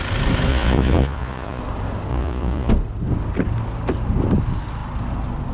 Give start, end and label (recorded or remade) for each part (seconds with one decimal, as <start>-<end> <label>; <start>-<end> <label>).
0.0-0.5 recorded; 0.5-1.6 remade; 1.6-2.1 recorded; 2.1-2.7 remade; 2.7-5.5 recorded